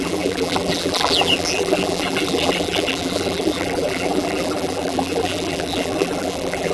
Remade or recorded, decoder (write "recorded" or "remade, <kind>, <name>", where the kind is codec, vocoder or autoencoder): remade, vocoder, BigVGAN v2